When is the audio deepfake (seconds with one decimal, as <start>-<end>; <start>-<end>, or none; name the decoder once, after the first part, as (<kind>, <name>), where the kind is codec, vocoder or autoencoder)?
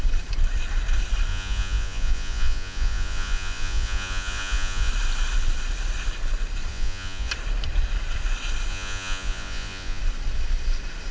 1.3-4.9 (vocoder, Vocos); 6.7-7.3; 8.7-10.0